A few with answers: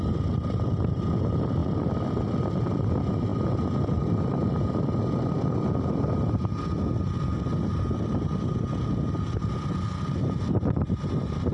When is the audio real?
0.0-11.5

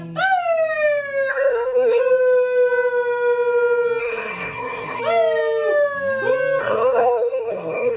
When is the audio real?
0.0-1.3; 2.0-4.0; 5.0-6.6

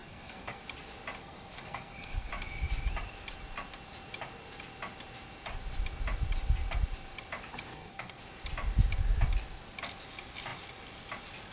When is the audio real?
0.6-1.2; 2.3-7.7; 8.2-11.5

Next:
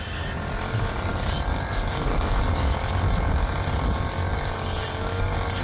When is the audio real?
0.0-5.6

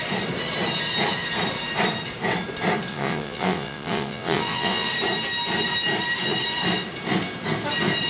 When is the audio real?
0.0-2.9; 4.9-8.1

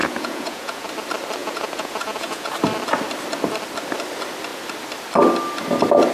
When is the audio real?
0.9-1.4; 2.5-6.1

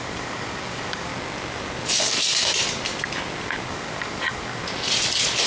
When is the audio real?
1.1-2.0; 2.4-3.7; 4.6-5.5